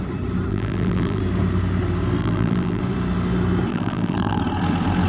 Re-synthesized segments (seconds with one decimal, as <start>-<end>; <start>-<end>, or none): 0.5-1.2; 2.2-2.8; 3.7-4.4